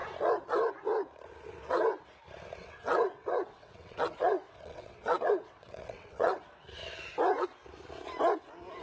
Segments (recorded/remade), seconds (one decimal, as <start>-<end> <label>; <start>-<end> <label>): 0.0-2.6 recorded; 2.6-6.4 remade; 6.4-8.8 recorded